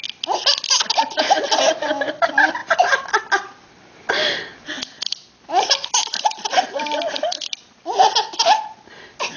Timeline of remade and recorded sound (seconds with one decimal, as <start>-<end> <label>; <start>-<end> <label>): 0.0-2.6 recorded; 2.6-3.2 remade; 3.2-9.4 recorded